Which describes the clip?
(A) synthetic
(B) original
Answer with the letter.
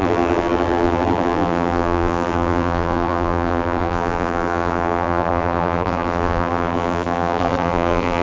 A